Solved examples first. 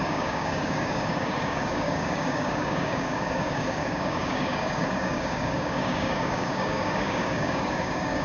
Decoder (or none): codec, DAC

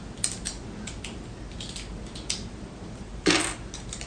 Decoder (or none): none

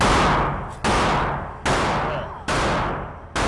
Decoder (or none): none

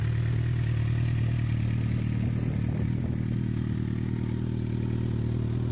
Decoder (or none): none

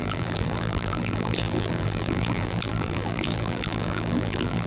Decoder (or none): vocoder, BigVGAN v2